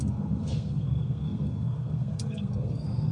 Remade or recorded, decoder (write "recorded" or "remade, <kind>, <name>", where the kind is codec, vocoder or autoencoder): remade, codec, SNAC